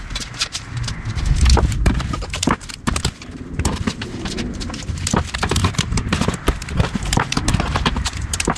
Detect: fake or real fake